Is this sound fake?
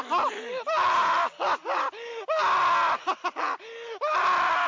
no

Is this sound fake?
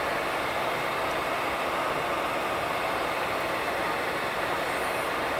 no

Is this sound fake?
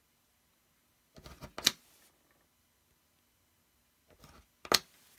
no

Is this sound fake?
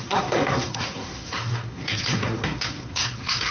yes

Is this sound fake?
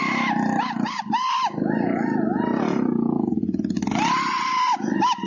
no